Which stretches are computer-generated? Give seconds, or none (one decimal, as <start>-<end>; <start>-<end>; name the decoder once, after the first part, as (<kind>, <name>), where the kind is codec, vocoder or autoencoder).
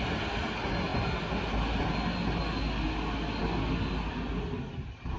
none